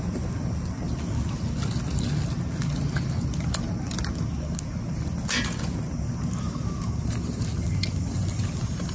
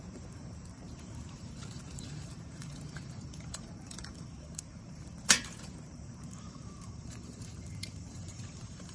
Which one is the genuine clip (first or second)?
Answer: first